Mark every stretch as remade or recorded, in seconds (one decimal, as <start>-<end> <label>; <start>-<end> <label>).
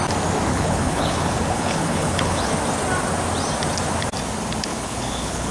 0.0-0.5 recorded; 0.5-2.5 remade; 2.5-4.7 recorded; 4.7-5.5 remade